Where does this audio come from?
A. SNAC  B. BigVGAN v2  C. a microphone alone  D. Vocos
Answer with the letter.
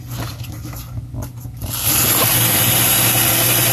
C